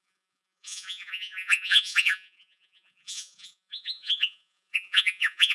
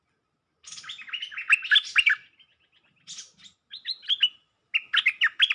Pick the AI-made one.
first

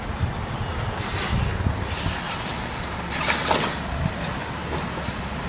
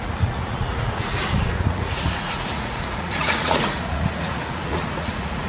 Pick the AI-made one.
second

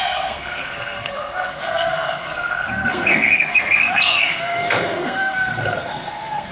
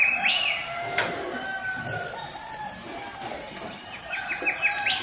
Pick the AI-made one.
first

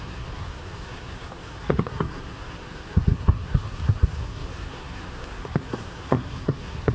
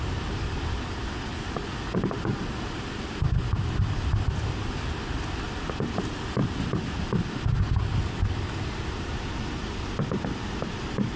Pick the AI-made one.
first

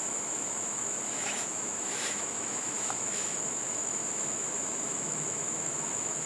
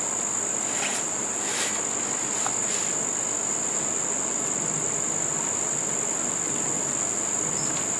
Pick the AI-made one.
first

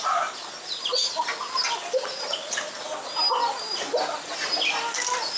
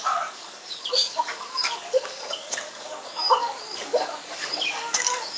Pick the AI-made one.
second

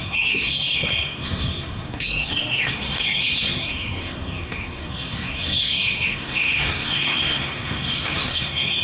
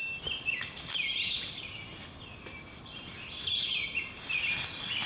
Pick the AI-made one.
first